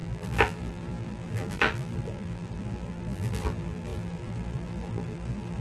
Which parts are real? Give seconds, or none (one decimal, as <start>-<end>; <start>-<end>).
none